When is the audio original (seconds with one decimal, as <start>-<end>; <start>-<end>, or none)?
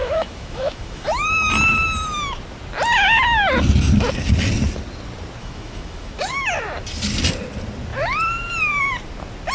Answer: 1.5-5.4; 6.5-9.5